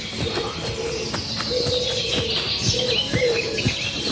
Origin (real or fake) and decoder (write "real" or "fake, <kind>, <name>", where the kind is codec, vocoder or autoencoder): real